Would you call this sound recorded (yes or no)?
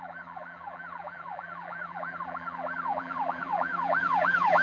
no